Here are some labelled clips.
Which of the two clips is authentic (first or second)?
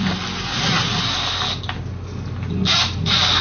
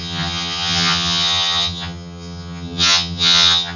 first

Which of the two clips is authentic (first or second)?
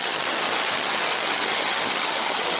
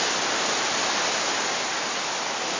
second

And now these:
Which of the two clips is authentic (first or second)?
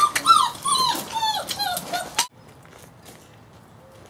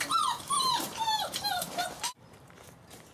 first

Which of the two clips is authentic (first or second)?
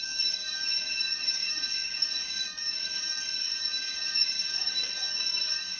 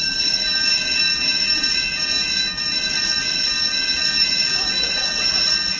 second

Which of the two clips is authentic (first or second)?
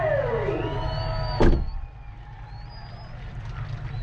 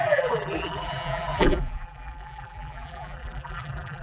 first